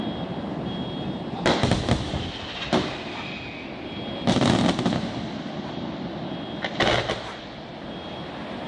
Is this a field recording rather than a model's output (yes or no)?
yes